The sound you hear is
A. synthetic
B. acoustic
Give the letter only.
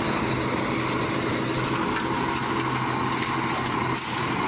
B